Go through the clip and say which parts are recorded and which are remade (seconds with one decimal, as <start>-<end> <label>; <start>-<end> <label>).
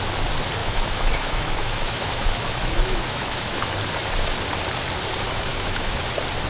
0.0-0.6 recorded; 0.6-3.7 remade; 3.7-5.5 recorded; 5.5-6.0 remade; 6.0-6.5 recorded